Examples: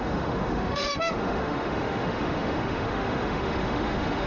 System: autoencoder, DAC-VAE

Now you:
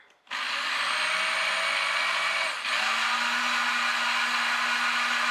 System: none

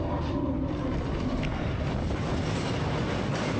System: none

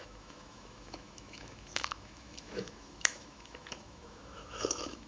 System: autoencoder, DAC-VAE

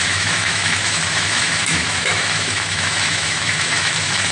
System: autoencoder, DAC-VAE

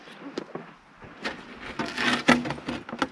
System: none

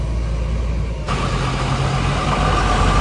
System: none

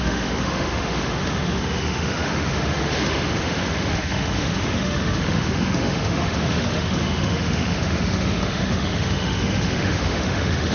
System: autoencoder, DAC-VAE